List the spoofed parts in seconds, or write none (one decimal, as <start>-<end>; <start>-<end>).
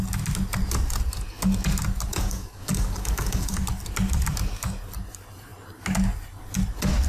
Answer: 2.1-3.5